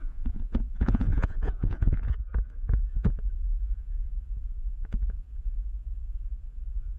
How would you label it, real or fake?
fake